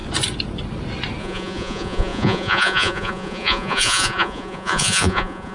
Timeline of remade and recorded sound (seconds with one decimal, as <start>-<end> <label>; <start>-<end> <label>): 0.0-1.2 recorded; 1.2-5.5 remade